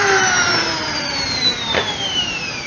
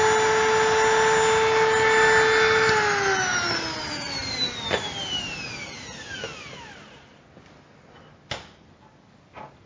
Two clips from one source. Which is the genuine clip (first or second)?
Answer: second